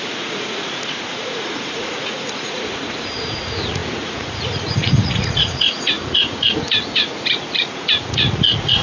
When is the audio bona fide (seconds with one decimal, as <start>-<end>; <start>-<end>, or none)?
none